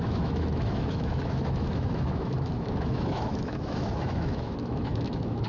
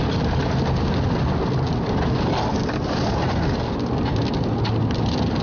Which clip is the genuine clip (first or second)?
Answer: second